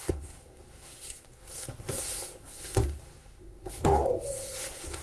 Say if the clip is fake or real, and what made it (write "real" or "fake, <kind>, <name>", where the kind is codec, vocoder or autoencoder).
fake, codec, SNAC